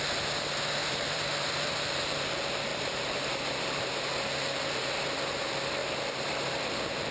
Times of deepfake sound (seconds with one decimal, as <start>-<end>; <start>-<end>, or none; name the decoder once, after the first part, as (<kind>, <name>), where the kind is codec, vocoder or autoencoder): 0.8-2.3 (vocoder, BigVGAN v2); 2.7-3.9; 5.8-7.1